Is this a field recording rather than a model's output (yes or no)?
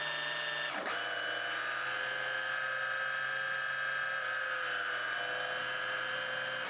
yes